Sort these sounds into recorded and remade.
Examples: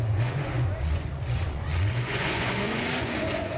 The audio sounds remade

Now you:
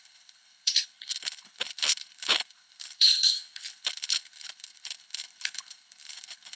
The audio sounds remade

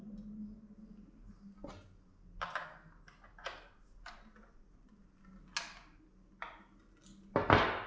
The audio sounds recorded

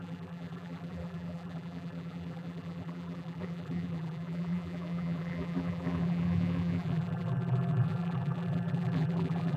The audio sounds remade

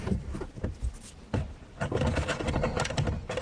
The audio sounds recorded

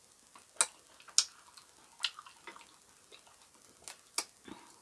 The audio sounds recorded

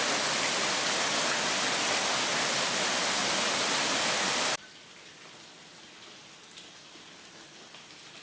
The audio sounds recorded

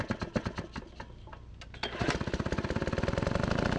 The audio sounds recorded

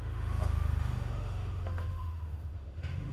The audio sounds remade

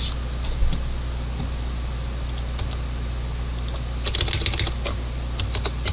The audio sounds recorded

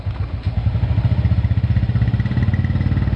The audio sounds recorded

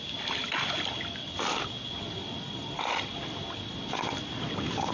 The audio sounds recorded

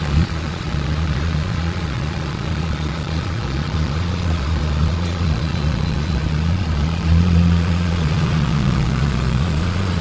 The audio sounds remade